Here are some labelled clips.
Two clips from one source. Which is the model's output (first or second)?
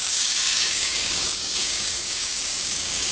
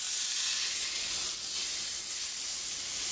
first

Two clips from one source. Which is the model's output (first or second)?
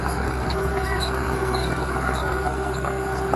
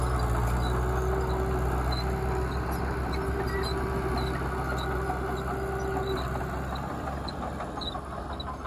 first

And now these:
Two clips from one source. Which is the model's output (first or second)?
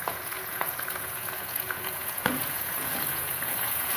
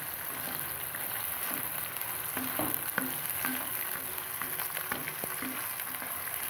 first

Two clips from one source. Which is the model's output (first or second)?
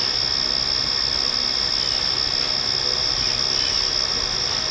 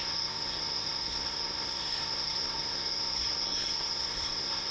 second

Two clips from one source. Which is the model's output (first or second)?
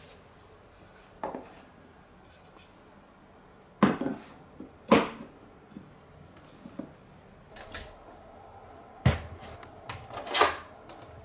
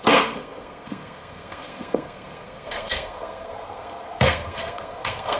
second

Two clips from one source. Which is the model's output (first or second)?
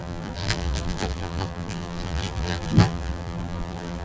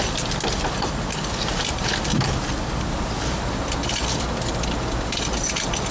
first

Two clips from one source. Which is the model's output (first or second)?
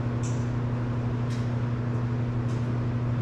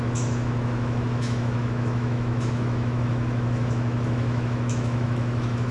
second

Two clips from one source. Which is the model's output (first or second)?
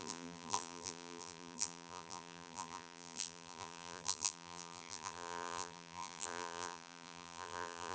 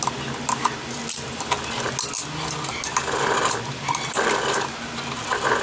first